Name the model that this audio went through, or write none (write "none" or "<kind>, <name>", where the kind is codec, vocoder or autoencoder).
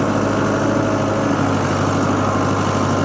none